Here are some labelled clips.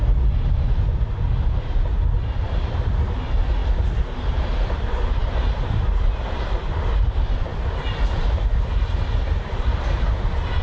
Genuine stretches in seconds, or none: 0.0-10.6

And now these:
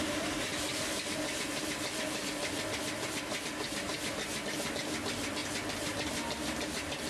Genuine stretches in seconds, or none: 0.0-7.1